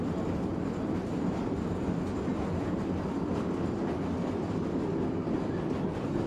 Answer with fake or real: real